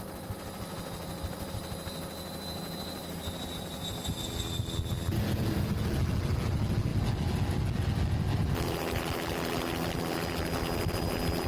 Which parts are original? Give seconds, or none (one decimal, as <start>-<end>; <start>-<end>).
0.0-11.5